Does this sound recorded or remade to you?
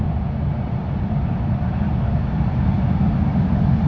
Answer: recorded